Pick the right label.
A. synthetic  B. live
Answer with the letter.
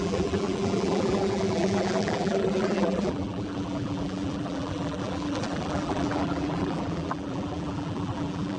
A